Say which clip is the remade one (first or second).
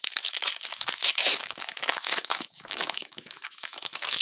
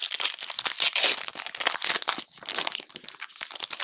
first